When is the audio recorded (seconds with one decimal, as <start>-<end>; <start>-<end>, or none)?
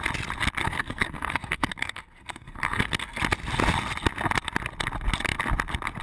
0.0-0.6; 3.2-6.0